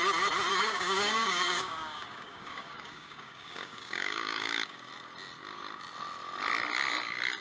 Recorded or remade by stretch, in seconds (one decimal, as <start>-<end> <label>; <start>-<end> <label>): 0.0-0.5 recorded; 0.5-4.9 remade; 4.9-7.4 recorded